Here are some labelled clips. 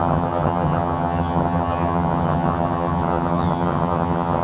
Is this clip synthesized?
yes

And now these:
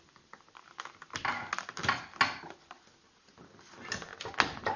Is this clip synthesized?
no